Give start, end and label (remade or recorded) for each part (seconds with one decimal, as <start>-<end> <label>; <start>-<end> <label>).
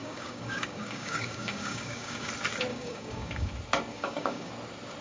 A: 0.0-2.3 remade; 2.3-2.7 recorded; 2.7-3.5 remade; 3.5-3.9 recorded; 3.9-4.5 remade; 4.5-5.0 recorded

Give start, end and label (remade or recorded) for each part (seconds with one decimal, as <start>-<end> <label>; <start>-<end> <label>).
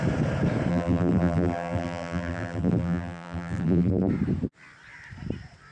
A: 0.0-0.7 recorded; 0.7-4.1 remade; 4.1-5.7 recorded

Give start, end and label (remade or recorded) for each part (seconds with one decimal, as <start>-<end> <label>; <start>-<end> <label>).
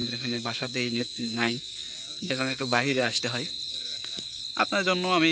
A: 0.0-3.2 remade; 3.2-3.7 recorded; 3.7-4.4 remade; 4.4-5.3 recorded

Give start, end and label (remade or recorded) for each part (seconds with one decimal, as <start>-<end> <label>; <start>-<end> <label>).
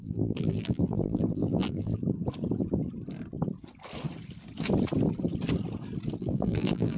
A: 0.0-2.0 remade; 2.0-6.2 recorded; 6.2-7.0 remade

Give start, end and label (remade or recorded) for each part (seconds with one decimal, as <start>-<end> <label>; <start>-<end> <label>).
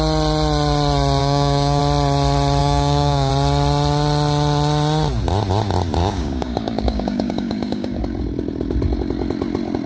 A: 0.0-1.2 recorded; 1.2-1.8 remade; 1.8-2.6 recorded; 2.6-3.3 remade; 3.3-6.0 recorded; 6.0-8.0 remade; 8.0-9.9 recorded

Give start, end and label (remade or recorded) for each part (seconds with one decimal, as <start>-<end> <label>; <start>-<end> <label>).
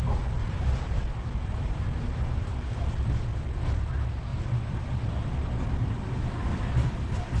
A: 0.0-6.5 recorded; 6.5-7.4 remade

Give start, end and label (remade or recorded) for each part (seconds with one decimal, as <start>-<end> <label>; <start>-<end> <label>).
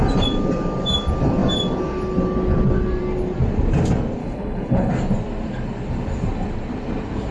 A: 0.0-4.2 recorded; 4.2-4.9 remade; 4.9-7.3 recorded